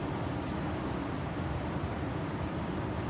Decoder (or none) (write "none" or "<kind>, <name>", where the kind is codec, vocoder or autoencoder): none